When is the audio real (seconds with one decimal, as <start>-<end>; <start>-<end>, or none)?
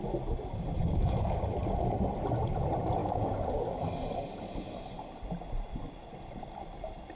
0.0-0.8; 1.4-3.0; 3.8-7.2